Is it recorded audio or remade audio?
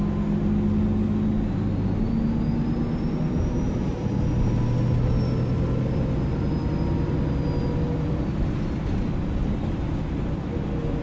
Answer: recorded